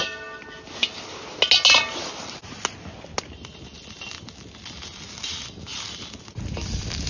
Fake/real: real